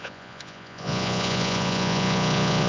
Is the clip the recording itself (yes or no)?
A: no